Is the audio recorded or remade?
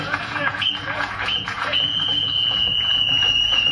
remade